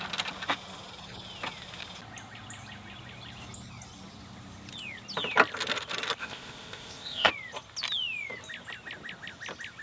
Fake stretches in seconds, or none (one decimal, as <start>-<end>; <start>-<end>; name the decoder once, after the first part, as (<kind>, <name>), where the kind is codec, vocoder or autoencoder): 6.2-7.3 (codec, ZipCodec)